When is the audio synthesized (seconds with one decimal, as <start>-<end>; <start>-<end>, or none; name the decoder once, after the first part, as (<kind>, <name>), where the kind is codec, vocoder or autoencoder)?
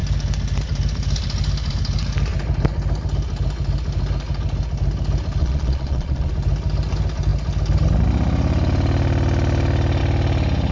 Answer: 5.4-6.3 (vocoder, Vocos)